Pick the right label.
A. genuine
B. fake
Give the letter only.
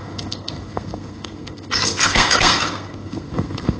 B